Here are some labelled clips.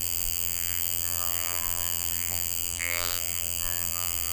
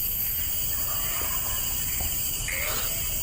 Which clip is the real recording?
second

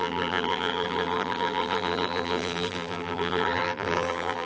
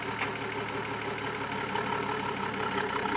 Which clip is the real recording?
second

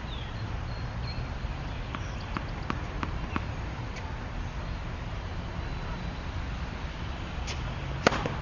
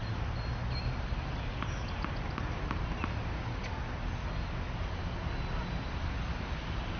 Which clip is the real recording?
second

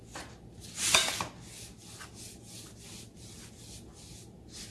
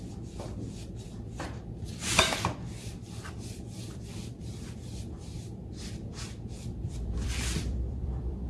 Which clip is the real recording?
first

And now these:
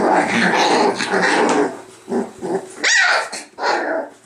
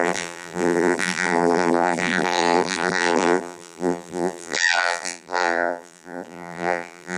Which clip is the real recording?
first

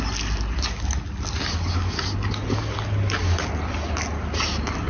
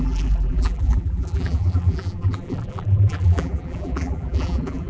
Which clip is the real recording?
first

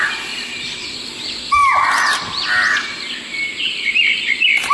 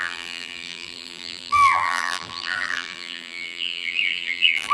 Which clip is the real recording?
first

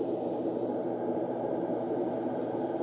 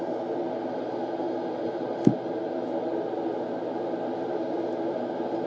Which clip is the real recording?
second